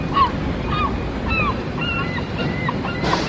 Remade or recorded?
recorded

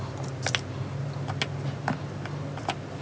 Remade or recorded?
recorded